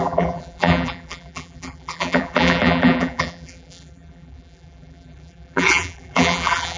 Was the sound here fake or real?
fake